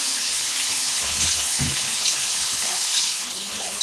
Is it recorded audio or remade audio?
remade